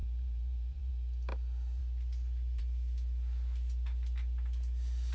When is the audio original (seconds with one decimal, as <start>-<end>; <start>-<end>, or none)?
0.9-5.1